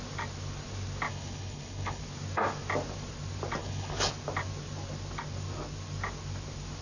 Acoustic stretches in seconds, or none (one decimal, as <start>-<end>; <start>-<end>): 0.0-1.1; 2.0-3.6; 4.1-6.8